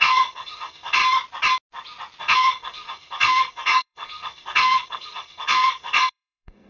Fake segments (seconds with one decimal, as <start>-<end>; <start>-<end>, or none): 0.0-1.0; 2.2-6.7